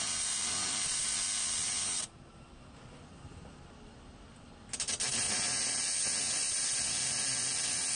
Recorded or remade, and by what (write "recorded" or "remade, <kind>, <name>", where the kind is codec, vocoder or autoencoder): recorded